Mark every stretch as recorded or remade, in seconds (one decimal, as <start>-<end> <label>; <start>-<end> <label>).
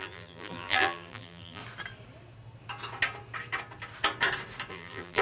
0.0-1.6 remade; 1.6-4.7 recorded; 4.7-5.2 remade